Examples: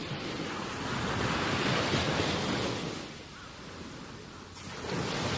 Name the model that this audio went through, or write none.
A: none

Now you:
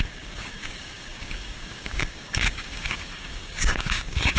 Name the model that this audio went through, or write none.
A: codec, DAC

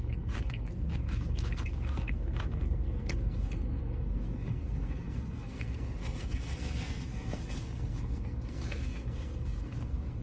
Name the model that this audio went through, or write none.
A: codec, SNAC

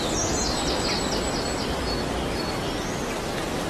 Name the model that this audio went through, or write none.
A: none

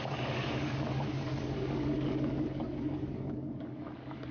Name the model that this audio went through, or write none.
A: codec, DAC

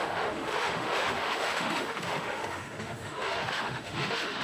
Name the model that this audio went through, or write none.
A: autoencoder, DAC-VAE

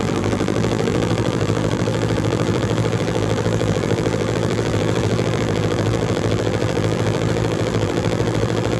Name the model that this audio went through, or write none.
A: vocoder, BigVGAN v2